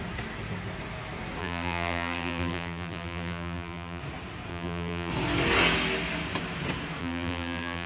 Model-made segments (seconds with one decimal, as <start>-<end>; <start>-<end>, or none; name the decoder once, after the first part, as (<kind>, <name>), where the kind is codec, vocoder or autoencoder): 1.4-4.0 (vocoder, BigVGAN v2); 4.5-5.1; 7.0-7.9